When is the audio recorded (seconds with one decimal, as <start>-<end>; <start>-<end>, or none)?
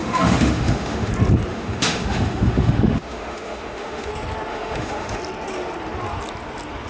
1.1-1.5; 4.1-4.5; 5.2-6.9